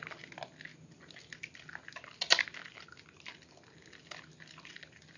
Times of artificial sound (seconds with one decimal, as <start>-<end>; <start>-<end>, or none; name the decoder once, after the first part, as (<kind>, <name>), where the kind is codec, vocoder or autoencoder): none